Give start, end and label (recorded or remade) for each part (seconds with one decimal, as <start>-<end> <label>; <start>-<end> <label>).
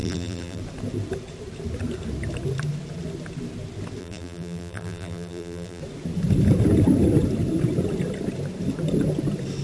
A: 0.0-0.6 remade; 0.6-4.0 recorded; 4.0-5.8 remade; 5.8-9.6 recorded